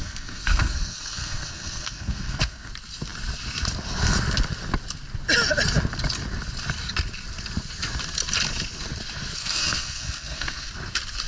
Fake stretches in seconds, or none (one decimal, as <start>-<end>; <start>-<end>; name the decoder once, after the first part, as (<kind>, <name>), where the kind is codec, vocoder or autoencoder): 0.0-2.7 (codec, SNAC); 9.4-10.7